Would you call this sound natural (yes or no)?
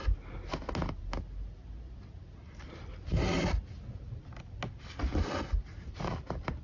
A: yes